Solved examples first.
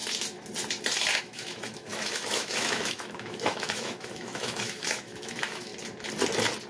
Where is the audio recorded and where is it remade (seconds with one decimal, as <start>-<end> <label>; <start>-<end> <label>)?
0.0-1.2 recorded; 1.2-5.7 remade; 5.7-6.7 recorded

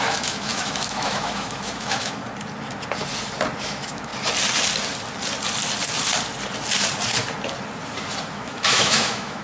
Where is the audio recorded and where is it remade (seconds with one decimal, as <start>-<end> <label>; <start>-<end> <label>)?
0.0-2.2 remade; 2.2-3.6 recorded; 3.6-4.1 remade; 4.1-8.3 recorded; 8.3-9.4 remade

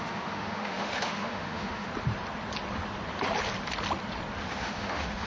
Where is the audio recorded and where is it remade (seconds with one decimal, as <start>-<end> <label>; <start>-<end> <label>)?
0.0-1.9 remade; 1.9-4.4 recorded; 4.4-5.3 remade

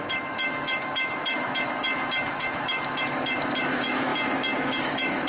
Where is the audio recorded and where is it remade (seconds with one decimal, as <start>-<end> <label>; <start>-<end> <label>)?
0.0-4.1 remade; 4.1-4.8 recorded; 4.8-5.3 remade

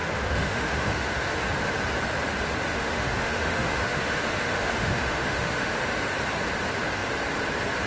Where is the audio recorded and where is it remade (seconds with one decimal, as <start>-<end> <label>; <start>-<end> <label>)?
0.0-1.4 remade; 1.4-2.7 recorded; 2.7-5.7 remade; 5.7-7.9 recorded

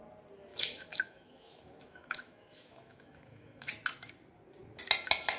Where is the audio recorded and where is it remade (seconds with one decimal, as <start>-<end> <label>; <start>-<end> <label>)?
0.0-0.5 recorded; 0.5-3.7 remade; 3.7-5.4 recorded

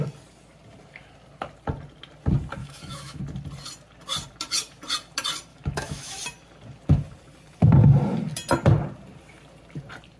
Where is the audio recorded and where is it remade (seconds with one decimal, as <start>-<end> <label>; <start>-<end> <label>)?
0.0-2.6 recorded; 2.6-3.2 remade; 3.2-5.5 recorded; 5.5-6.2 remade; 6.2-10.2 recorded

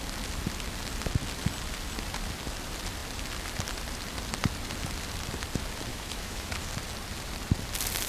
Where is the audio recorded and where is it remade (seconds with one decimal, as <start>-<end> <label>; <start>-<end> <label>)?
0.0-5.9 recorded; 5.9-6.5 remade; 6.5-8.1 recorded